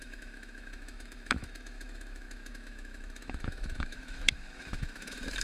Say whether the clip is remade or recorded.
remade